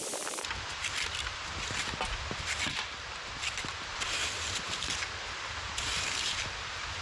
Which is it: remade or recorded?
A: remade